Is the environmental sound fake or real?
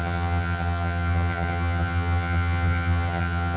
fake